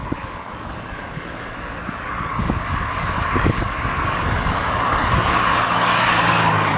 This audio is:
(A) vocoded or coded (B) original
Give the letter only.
A